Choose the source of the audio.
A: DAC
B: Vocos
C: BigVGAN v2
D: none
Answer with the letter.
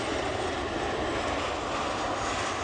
D